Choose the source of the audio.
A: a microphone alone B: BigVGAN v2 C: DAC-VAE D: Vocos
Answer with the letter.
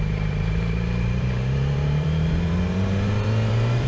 B